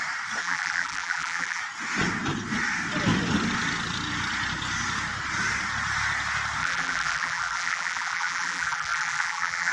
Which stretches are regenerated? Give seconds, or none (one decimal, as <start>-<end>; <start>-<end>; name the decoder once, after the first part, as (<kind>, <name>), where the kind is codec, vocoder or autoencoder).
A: 0.4-1.6 (vocoder, BigVGAN v2); 6.6-9.7